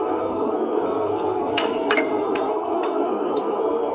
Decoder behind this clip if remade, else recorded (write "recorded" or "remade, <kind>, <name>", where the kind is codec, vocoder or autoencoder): remade, codec, SNAC